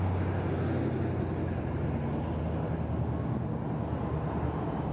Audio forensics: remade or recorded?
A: recorded